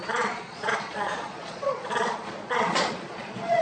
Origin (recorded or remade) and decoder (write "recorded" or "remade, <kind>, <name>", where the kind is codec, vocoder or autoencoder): remade, vocoder, Vocos